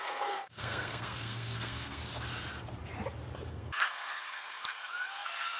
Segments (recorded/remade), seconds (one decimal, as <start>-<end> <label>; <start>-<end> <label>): 0.0-2.0 remade; 2.0-3.5 recorded; 3.5-5.6 remade

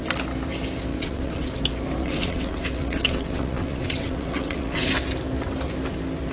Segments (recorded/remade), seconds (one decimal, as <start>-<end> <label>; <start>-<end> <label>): 0.0-0.9 recorded; 0.9-1.5 remade; 1.5-2.0 recorded; 2.0-4.9 remade; 4.9-6.3 recorded

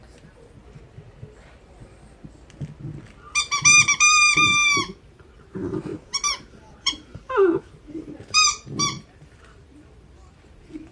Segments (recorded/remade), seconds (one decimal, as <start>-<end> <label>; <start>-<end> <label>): 0.0-0.6 remade; 0.6-3.7 recorded; 3.7-10.9 remade